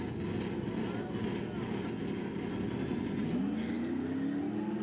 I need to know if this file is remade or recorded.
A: recorded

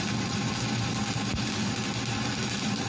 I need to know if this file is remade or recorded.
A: recorded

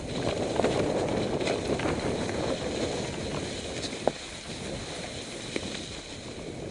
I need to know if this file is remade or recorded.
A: recorded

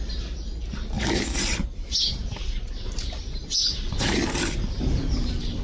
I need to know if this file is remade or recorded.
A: recorded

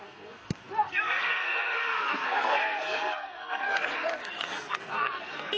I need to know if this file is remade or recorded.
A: remade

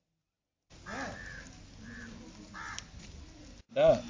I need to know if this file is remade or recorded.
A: recorded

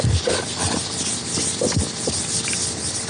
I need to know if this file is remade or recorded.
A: recorded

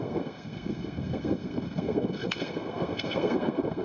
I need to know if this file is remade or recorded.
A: remade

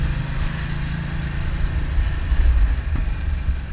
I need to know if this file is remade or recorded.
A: recorded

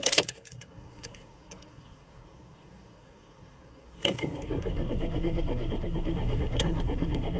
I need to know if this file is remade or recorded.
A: remade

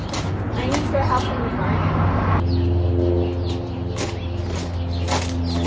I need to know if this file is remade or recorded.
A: recorded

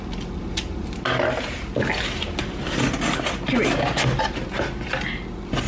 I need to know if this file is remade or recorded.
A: recorded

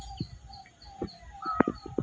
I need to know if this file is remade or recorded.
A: recorded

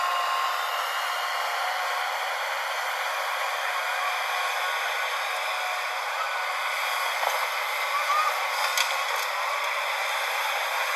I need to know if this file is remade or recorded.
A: recorded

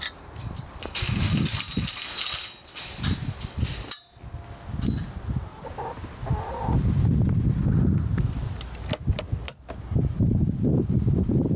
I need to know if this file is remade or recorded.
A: recorded